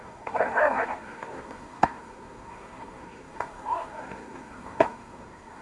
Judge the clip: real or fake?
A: fake